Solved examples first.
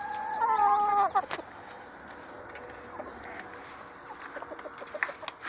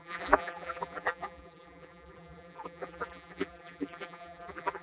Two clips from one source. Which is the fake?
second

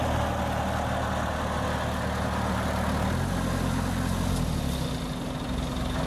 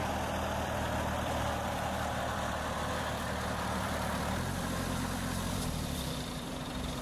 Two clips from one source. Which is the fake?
second